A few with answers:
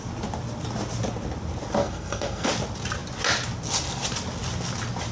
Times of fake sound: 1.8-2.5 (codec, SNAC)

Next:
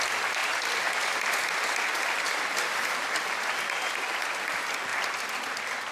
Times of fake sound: none

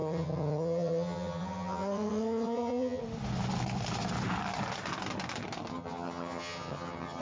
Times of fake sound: 0.0-3.0 (vocoder, HiFi-GAN); 5.7-7.2

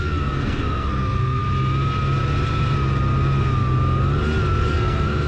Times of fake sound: 0.0-1.4 (codec, SNAC); 4.6-5.3

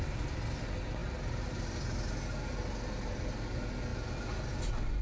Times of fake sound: none